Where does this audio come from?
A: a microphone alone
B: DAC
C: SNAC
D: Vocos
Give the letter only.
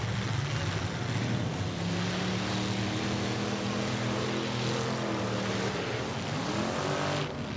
A